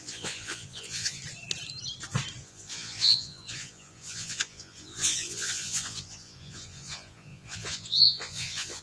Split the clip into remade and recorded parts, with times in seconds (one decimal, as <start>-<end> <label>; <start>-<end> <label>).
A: 0.0-1.2 remade; 1.2-2.4 recorded; 2.4-8.8 remade